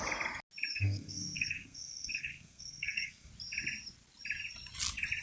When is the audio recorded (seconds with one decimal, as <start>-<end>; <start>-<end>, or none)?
0.0-0.7; 3.3-5.2